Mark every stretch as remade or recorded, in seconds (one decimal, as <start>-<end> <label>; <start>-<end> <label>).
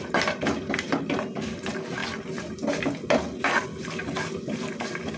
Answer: 0.0-5.2 recorded